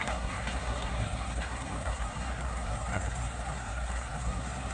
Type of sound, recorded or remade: remade